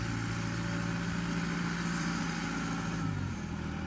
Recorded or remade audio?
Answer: remade